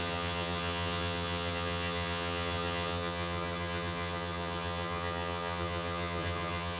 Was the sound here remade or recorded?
remade